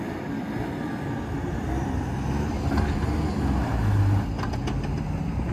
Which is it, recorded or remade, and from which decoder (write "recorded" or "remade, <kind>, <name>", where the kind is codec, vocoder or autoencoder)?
recorded